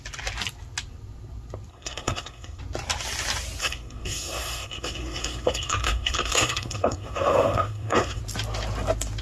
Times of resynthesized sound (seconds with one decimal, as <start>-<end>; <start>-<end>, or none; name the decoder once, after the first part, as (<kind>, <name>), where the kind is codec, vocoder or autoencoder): 1.7-2.6 (codec, SNAC); 3.6-8.2